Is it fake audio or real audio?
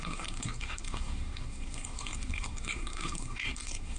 fake